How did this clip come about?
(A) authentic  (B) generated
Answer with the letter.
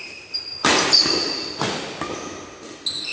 A